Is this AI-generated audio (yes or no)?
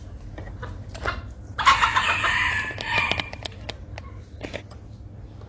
no